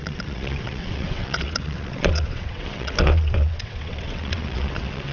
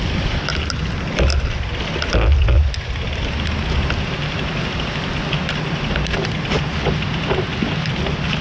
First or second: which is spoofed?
first